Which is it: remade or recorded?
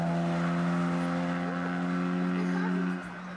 recorded